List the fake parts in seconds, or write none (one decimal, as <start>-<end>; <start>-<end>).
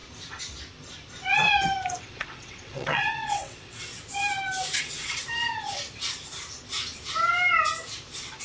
2.0-3.9; 4.8-5.2